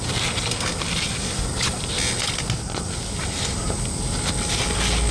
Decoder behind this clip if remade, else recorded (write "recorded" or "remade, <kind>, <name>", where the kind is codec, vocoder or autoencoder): recorded